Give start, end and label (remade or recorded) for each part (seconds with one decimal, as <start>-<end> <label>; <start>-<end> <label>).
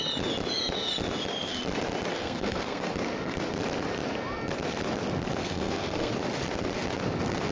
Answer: 0.0-2.1 recorded; 2.1-2.9 remade; 2.9-5.4 recorded; 5.4-6.1 remade; 6.1-7.5 recorded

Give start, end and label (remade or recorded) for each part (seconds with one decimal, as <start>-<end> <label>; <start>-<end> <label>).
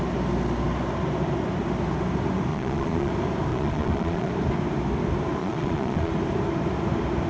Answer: 0.0-2.5 recorded; 2.5-3.1 remade; 3.1-3.5 recorded; 3.5-4.3 remade; 4.3-5.4 recorded; 5.4-6.1 remade; 6.1-7.3 recorded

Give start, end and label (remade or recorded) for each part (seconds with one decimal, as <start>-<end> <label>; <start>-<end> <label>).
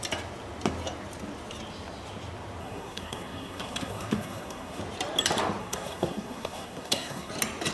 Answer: 0.0-2.6 recorded; 2.6-4.8 remade; 4.8-5.6 recorded; 5.6-7.3 remade; 7.3-7.7 recorded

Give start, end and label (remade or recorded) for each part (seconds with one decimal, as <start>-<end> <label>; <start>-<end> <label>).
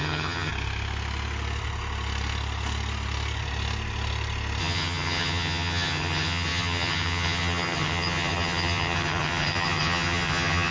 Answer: 0.0-0.5 remade; 0.5-4.6 recorded; 4.6-10.7 remade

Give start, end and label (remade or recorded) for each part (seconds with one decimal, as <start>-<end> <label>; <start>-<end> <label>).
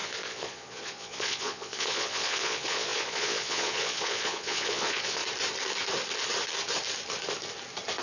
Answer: 0.0-5.2 remade; 5.2-8.0 recorded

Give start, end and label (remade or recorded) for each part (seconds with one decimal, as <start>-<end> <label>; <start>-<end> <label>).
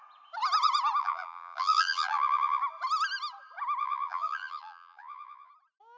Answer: 0.0-1.0 recorded; 1.0-2.6 remade; 2.6-3.8 recorded; 3.8-5.5 remade; 5.5-6.0 recorded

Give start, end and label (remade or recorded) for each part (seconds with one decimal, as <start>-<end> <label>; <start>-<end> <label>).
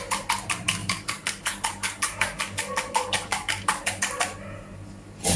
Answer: 0.0-0.8 recorded; 0.8-4.0 remade; 4.0-5.4 recorded